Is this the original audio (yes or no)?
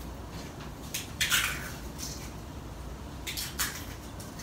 yes